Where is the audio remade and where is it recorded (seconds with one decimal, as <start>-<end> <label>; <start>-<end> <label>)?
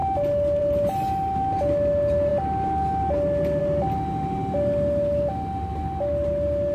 0.0-6.7 recorded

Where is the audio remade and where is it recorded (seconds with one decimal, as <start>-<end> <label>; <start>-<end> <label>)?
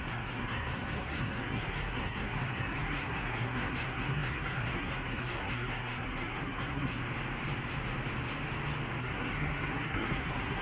0.0-7.0 remade; 7.0-9.0 recorded; 9.0-10.6 remade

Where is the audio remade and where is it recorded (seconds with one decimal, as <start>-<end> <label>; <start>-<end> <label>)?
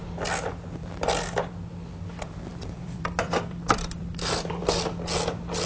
0.0-2.5 recorded; 2.5-4.6 remade; 4.6-5.7 recorded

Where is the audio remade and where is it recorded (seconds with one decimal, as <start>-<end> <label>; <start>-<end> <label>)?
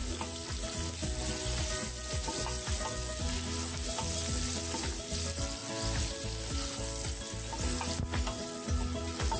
0.0-9.4 recorded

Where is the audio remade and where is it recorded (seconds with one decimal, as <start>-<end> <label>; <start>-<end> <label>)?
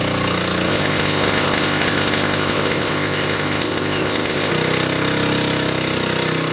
0.0-0.7 recorded; 0.7-4.5 remade; 4.5-6.5 recorded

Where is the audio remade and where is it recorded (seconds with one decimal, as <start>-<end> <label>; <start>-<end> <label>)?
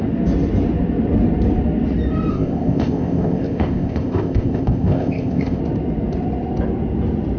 0.0-2.3 recorded; 2.3-5.6 remade; 5.6-7.4 recorded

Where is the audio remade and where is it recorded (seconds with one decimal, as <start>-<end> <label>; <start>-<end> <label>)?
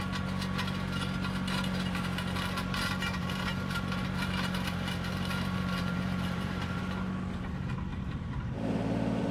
0.0-3.2 recorded; 3.2-6.8 remade; 6.8-7.9 recorded; 7.9-9.3 remade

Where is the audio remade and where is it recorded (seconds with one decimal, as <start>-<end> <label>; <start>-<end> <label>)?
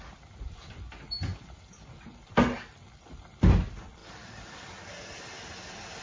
0.0-6.0 recorded